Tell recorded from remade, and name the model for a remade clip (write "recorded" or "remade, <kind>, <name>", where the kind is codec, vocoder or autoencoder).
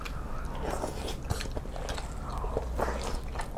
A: recorded